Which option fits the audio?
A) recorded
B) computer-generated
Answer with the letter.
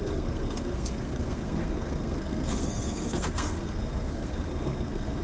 B